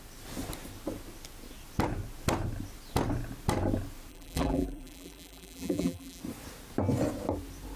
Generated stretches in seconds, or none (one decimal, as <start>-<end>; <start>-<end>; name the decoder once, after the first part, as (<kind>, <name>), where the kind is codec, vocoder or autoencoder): 4.1-6.2 (vocoder, BigVGAN v2)